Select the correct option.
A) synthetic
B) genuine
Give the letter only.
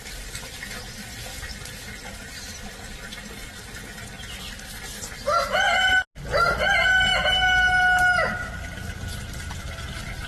B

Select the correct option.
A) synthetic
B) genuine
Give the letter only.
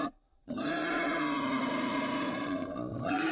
A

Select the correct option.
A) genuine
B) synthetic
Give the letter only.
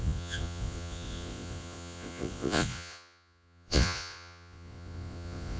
B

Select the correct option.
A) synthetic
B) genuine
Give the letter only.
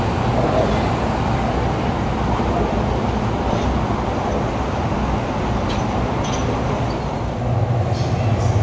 B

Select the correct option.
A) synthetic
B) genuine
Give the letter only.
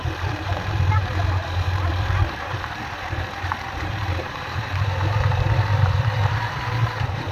A